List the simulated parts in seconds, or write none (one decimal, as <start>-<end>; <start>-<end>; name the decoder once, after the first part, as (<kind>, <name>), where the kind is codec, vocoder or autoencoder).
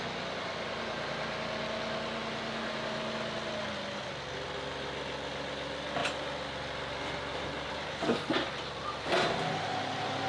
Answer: none